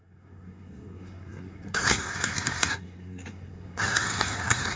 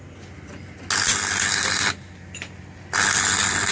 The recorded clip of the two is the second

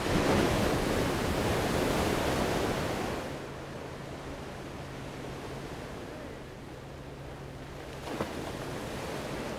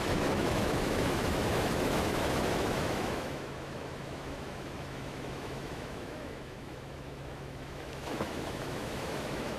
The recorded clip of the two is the first